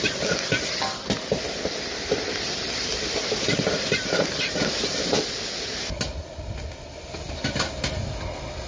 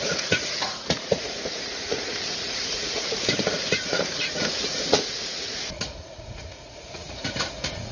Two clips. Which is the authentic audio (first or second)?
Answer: first